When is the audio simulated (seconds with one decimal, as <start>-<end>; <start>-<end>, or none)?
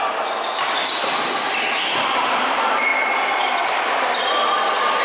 none